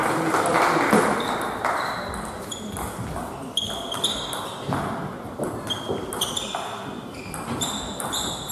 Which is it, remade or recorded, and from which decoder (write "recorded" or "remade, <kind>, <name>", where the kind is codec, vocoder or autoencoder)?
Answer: recorded